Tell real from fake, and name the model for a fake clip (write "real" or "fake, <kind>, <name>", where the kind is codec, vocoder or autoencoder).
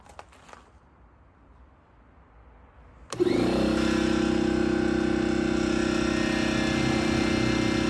real